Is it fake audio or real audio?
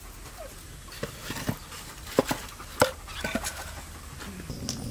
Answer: real